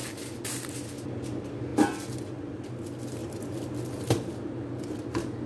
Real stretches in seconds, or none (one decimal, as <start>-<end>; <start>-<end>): 0.0-5.5